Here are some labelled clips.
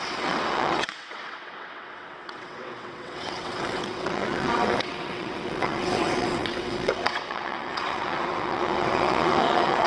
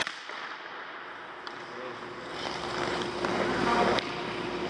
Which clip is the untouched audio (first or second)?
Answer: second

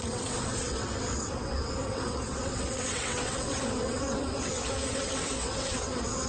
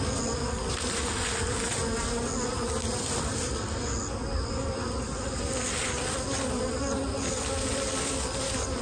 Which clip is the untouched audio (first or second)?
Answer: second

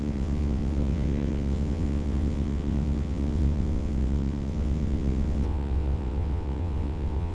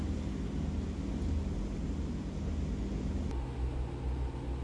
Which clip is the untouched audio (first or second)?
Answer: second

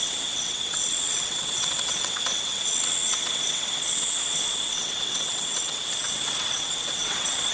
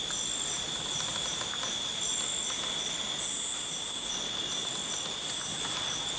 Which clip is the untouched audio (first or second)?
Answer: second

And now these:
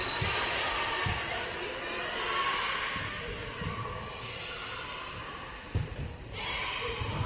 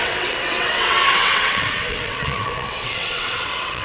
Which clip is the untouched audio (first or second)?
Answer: first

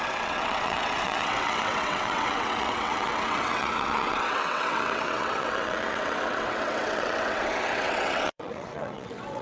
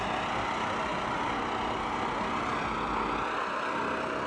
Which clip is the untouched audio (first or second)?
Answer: second